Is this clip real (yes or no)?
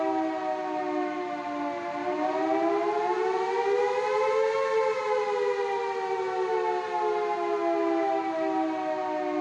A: yes